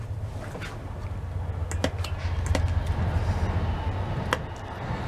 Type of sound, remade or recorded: recorded